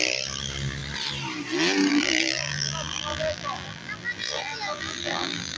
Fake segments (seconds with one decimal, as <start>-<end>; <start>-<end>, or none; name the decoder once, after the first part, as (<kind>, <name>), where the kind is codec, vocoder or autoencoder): 1.9-5.6 (vocoder, BigVGAN v2)